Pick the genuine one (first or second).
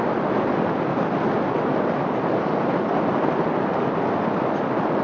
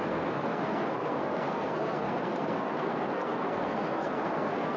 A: first